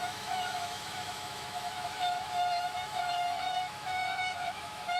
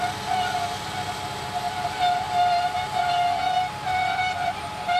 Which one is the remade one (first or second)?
first